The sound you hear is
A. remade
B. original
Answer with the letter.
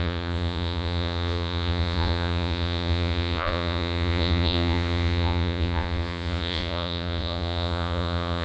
A